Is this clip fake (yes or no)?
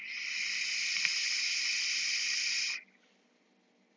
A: no